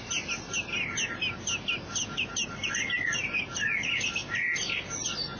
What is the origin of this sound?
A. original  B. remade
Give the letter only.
A